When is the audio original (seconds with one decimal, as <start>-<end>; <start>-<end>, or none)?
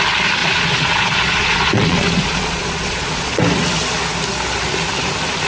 0.0-0.4; 3.4-5.5